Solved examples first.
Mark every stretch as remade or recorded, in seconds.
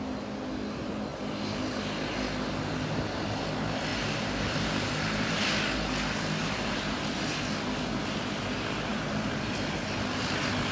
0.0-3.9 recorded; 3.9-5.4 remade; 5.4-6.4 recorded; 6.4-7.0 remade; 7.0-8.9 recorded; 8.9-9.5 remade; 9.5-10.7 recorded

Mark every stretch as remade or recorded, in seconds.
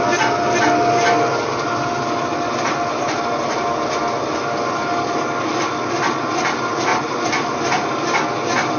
0.0-6.9 recorded; 6.9-7.5 remade; 7.5-8.8 recorded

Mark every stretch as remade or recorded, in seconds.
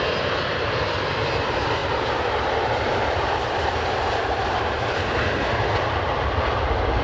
0.0-1.8 recorded; 1.8-6.0 remade; 6.0-7.0 recorded